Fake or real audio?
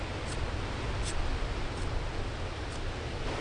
real